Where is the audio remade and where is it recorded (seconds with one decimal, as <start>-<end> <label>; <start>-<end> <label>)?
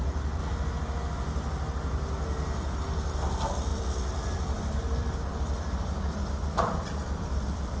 0.0-0.4 remade; 0.4-2.8 recorded; 2.8-7.8 remade